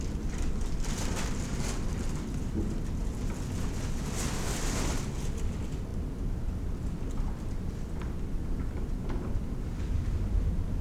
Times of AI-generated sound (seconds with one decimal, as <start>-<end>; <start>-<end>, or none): none